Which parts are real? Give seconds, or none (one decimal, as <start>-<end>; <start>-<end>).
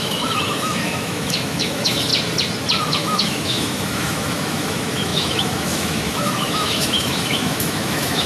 2.1-2.8